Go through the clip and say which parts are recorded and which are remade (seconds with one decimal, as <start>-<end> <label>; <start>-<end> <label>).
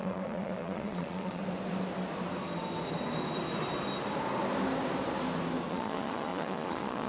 0.0-1.4 remade; 1.4-5.7 recorded; 5.7-7.1 remade